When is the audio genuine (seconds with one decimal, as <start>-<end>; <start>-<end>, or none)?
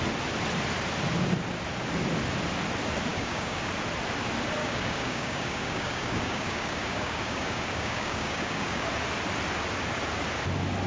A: 0.0-3.1; 3.7-4.6; 8.8-10.9